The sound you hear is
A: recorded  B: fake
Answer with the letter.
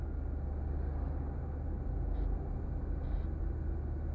A